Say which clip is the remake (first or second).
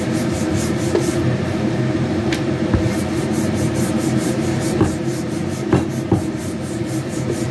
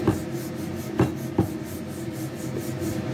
first